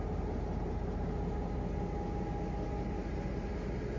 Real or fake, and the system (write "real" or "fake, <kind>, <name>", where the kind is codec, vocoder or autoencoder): real